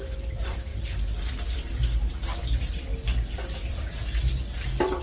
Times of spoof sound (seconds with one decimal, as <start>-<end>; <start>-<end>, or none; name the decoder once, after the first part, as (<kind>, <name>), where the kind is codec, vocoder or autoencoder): 0.0-0.7 (vocoder, BigVGAN v2); 3.7-5.0

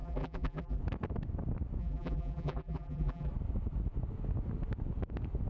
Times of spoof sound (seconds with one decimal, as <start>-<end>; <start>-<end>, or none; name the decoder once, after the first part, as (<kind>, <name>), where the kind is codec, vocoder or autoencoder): 0.0-0.8 (vocoder, BigVGAN v2); 1.8-3.3

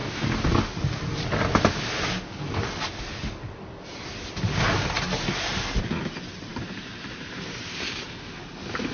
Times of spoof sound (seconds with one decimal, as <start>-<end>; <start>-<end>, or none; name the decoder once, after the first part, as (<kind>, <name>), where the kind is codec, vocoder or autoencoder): 6.5-8.1 (vocoder, BigVGAN v2)

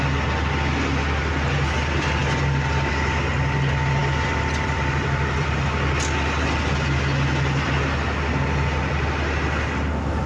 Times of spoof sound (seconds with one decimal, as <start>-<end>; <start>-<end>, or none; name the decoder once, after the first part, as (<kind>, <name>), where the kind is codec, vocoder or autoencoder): 4.0-5.6 (vocoder, BigVGAN v2)